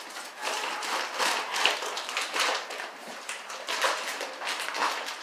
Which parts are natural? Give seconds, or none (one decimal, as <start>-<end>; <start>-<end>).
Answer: 0.0-0.4; 3.5-5.2